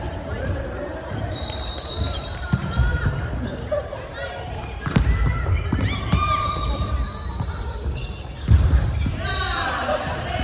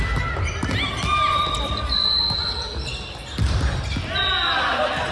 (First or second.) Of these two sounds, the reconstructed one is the first